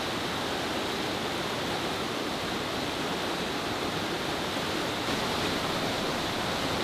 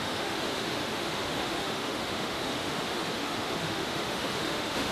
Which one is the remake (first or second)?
second